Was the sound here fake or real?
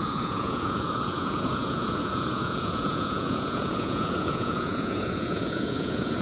fake